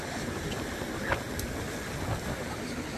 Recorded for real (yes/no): yes